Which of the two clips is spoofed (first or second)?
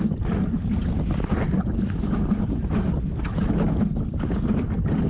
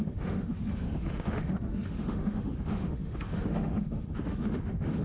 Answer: second